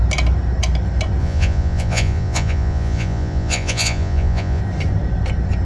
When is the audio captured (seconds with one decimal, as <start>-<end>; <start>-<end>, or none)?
0.0-1.2; 4.6-5.7